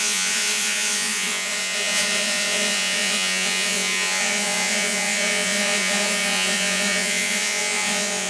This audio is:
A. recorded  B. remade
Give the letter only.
B